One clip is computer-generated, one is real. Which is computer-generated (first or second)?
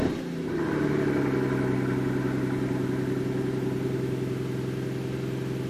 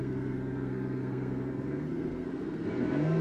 second